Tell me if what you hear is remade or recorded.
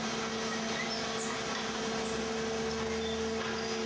recorded